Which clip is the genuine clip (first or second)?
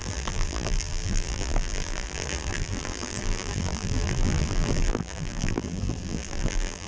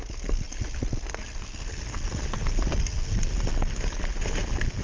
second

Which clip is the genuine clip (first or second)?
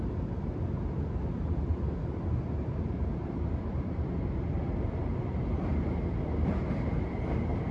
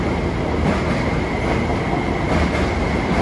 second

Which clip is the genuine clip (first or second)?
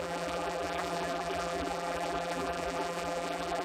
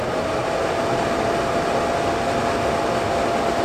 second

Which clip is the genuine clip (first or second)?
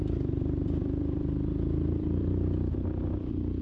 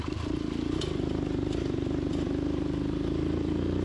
second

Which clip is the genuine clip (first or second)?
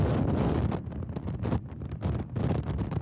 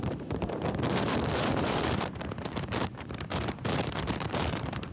first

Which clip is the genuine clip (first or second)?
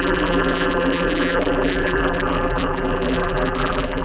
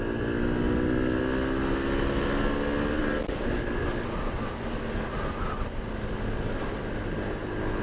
second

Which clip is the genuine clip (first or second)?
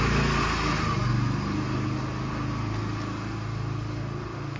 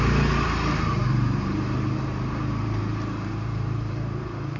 first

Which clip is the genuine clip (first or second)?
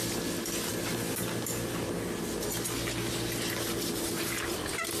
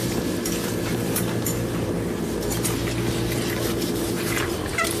first